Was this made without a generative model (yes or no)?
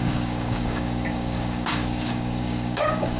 no